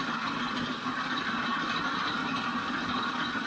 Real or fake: real